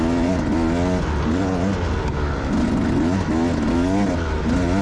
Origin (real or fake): real